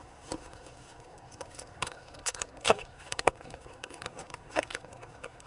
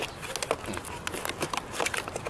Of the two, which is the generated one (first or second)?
first